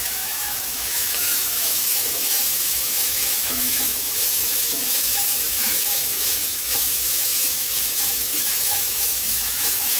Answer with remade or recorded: remade